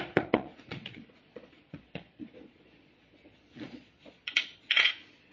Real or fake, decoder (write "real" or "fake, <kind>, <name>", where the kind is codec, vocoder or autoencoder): fake, vocoder, Vocos